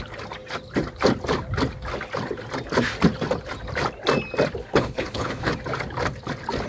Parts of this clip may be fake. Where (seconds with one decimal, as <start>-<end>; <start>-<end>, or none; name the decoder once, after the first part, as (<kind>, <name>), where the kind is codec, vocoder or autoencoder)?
4.6-5.5 (codec, HILCodec)